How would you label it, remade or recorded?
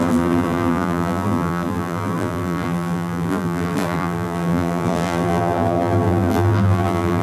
remade